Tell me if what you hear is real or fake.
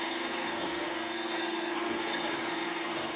fake